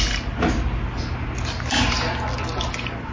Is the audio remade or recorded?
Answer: recorded